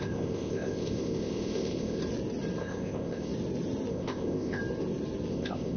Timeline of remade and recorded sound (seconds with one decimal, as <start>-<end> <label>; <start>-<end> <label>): 0.0-2.0 remade; 2.0-2.6 recorded; 2.6-3.3 remade; 3.3-3.9 recorded; 3.9-4.6 remade; 4.6-5.3 recorded; 5.3-5.8 remade